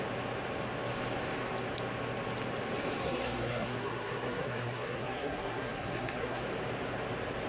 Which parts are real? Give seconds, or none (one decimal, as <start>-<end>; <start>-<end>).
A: 0.0-3.0; 6.4-7.5